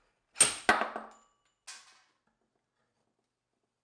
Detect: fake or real real